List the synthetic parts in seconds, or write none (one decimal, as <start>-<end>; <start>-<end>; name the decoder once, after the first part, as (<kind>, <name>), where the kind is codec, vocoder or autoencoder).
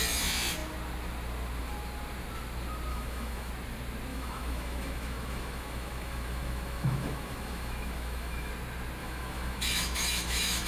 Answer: 2.9-3.5 (autoencoder, DAC-VAE); 4.1-8.5; 9.0-10.7